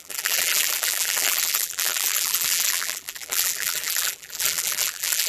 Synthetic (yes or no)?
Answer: yes